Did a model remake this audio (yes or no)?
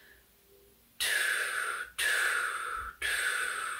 no